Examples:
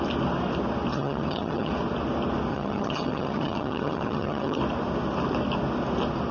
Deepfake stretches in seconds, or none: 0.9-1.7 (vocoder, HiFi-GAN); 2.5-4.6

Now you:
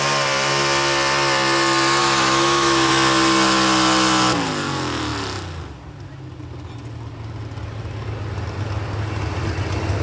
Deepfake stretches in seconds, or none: 2.0-2.9 (autoencoder, DAC-VAE)

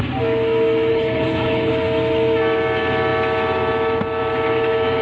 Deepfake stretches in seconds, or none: 0.9-1.7 (codec, HILCodec)

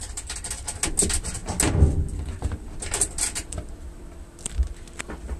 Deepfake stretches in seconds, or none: none

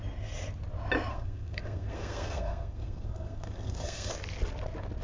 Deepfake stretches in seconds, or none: 1.1-4.1 (codec, SNAC)

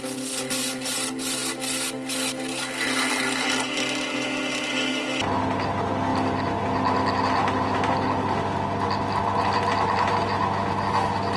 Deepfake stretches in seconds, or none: none

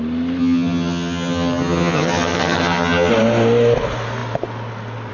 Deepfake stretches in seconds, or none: 0.4-3.1 (vocoder, HiFi-GAN)

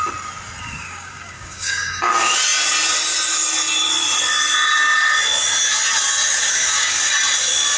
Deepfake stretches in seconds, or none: 0.6-2.1 (codec, DAC); 6.3-7.0